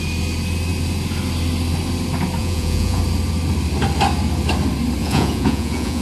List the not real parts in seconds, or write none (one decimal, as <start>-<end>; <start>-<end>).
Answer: 2.4-3.0; 5.0-6.0